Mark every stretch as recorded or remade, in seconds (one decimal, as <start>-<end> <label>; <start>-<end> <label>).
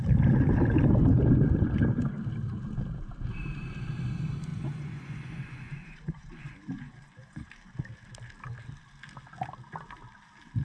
0.0-4.5 recorded; 4.5-7.5 remade; 7.5-10.6 recorded